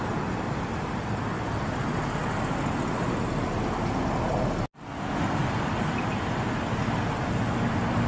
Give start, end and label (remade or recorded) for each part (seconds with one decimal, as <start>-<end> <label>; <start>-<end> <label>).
0.0-8.1 recorded